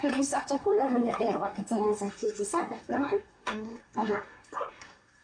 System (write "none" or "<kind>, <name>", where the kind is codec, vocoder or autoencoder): codec, SNAC